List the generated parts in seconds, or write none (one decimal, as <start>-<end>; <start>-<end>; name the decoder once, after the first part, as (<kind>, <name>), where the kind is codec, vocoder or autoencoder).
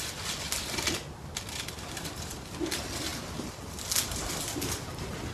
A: none